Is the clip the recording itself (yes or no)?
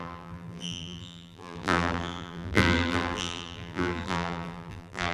no